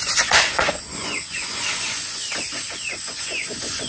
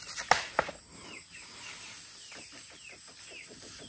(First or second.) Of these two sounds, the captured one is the second